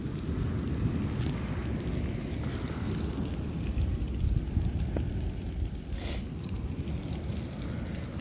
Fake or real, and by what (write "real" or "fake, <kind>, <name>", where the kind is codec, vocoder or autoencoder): real